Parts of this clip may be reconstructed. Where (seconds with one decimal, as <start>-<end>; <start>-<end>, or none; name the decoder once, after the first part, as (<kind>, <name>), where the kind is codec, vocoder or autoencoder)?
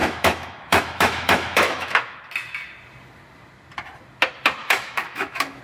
0.0-2.2 (autoencoder, DAC-VAE); 4.6-5.6